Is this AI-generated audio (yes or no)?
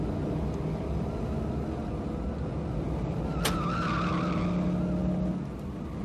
no